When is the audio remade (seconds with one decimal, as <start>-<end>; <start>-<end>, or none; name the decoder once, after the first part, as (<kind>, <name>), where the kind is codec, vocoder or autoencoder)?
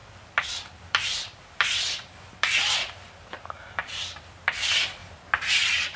0.0-5.0 (vocoder, BigVGAN v2); 5.5-6.0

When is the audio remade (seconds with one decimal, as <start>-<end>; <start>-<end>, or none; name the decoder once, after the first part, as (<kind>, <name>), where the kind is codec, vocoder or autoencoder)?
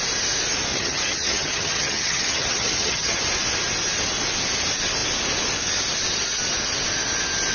0.7-3.2 (vocoder, HiFi-GAN)